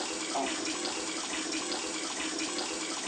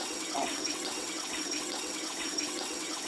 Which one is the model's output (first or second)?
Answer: second